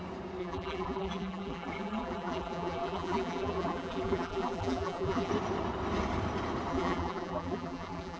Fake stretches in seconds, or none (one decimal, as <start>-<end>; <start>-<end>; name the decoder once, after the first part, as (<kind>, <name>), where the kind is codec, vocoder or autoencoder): 0.4-5.3 (vocoder, BigVGAN v2); 6.7-8.2